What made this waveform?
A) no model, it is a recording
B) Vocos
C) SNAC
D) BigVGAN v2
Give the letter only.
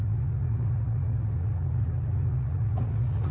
B